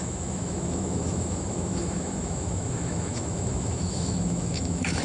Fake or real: fake